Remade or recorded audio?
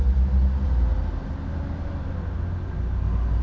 recorded